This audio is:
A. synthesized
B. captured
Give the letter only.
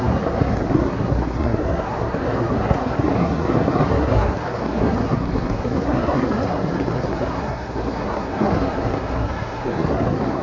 A